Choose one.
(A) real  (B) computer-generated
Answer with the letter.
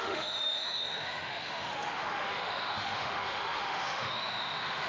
B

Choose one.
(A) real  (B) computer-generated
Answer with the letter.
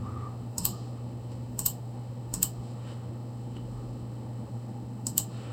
B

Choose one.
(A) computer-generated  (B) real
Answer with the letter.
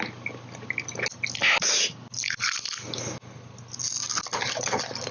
B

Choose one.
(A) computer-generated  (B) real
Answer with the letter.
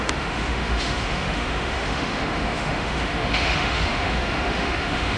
A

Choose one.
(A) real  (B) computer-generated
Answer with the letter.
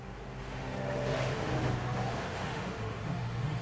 B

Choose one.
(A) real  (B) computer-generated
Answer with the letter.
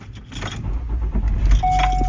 A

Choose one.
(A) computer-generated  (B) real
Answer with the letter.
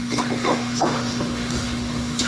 A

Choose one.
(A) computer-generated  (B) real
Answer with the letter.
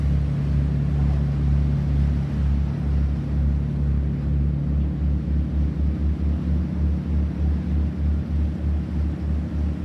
B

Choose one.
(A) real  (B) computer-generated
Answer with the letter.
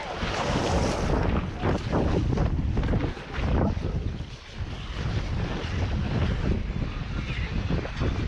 A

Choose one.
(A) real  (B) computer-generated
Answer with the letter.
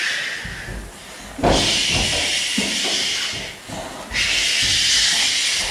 A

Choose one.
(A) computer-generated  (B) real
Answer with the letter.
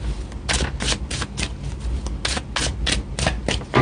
B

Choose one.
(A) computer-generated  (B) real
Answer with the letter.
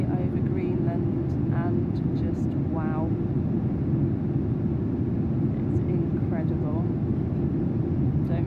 B